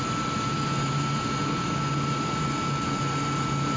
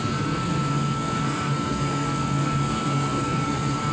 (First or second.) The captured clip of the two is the first